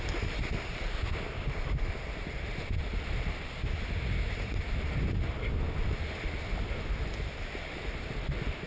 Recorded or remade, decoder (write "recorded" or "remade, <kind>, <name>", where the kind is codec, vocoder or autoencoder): recorded